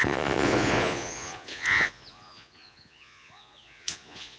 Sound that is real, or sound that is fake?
fake